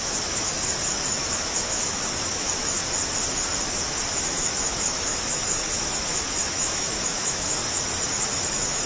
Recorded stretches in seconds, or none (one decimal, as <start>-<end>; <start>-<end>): 2.8-4.2; 7.6-8.5